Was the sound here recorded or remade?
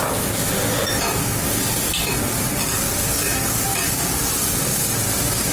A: recorded